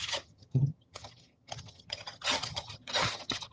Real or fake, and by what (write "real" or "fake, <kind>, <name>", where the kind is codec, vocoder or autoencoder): fake, vocoder, HiFi-GAN